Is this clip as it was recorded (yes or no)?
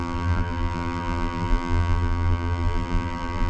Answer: no